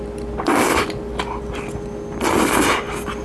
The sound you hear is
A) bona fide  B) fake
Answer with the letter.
A